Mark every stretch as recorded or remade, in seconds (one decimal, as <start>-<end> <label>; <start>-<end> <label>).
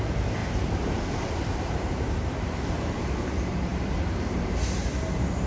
0.0-5.5 remade